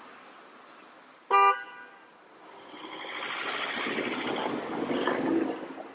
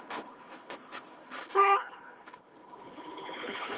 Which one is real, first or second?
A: first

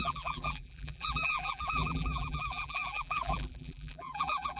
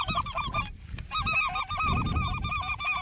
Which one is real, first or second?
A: second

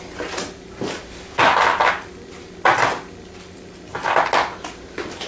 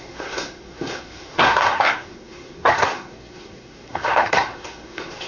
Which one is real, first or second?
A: first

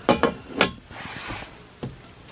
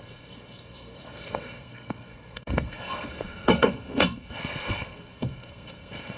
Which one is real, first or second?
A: first